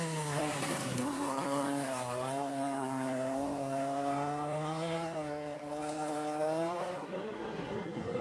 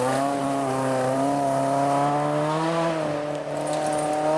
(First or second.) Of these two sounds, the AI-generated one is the first